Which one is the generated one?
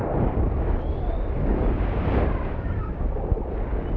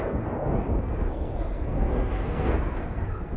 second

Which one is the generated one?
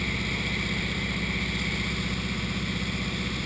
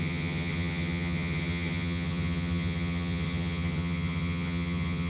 second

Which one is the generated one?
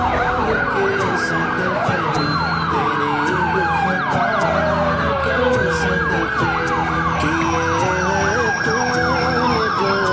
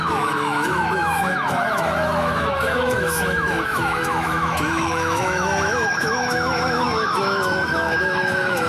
second